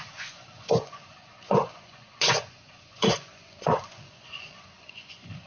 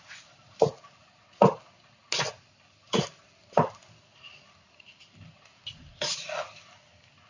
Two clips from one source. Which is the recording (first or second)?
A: second